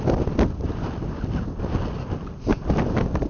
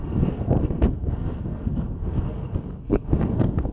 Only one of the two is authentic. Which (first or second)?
first